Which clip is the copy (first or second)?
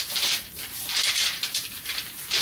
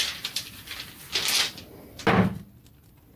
first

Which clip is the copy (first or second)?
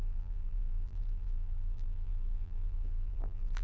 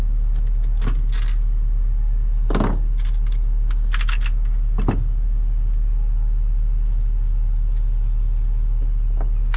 first